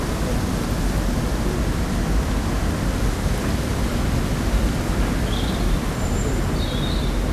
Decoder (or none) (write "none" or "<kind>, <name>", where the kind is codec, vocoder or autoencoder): none